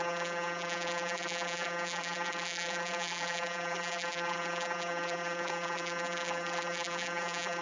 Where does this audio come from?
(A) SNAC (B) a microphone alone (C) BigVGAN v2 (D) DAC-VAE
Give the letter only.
C